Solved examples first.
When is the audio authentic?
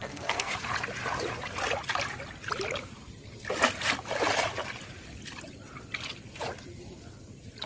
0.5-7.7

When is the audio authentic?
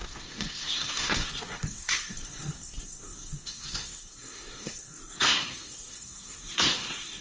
none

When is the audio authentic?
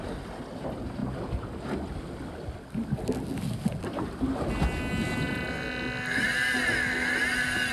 0.0-7.7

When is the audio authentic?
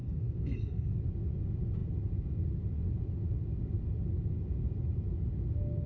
1.0-5.9